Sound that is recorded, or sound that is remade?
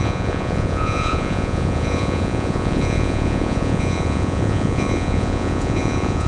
remade